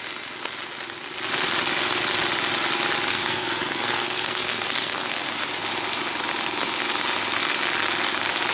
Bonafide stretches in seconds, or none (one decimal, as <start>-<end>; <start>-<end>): 0.0-3.1; 5.0-8.5